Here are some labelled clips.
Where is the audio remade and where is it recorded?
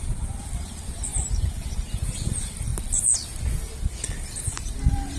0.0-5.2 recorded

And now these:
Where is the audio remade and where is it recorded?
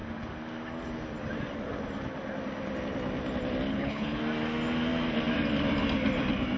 0.0-3.7 recorded; 3.7-4.2 remade; 4.2-6.6 recorded